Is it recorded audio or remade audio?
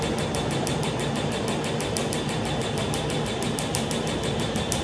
recorded